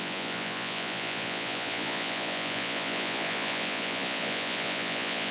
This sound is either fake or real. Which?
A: fake